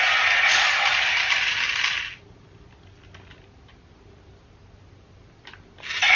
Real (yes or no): yes